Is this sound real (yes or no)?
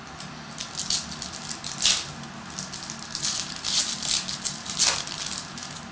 yes